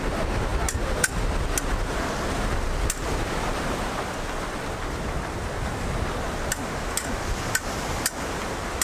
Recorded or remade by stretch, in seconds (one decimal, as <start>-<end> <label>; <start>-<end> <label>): 0.0-8.8 recorded